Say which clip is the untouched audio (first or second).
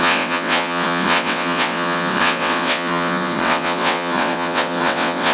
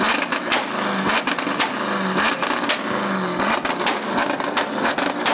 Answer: second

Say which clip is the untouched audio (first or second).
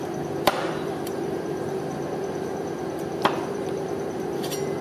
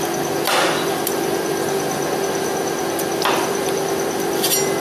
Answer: second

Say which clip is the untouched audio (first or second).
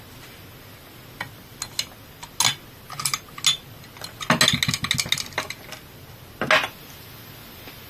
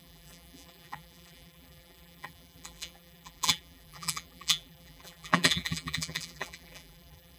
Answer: first